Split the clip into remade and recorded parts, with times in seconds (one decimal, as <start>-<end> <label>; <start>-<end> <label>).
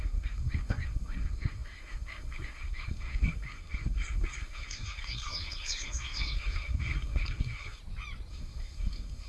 0.0-7.8 remade; 7.8-8.3 recorded; 8.3-9.3 remade